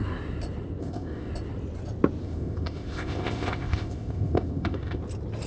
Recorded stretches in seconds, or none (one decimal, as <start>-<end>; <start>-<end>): 0.0-0.8; 1.3-2.2; 5.0-5.5

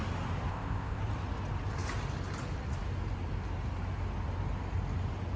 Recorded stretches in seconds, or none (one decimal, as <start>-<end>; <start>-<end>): 0.0-0.5; 1.0-5.4

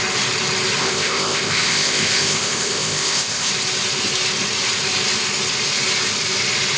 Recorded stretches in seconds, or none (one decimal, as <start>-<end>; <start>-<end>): 0.0-0.8; 3.5-6.8

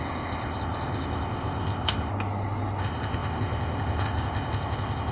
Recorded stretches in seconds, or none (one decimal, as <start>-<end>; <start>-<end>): 2.1-2.8

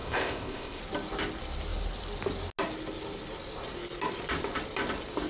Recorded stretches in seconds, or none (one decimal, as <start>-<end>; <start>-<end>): 0.8-5.3

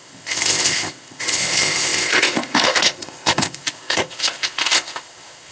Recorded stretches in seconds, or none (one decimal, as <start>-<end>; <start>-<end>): none

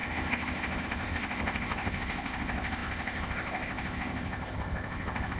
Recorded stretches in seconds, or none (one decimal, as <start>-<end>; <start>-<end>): none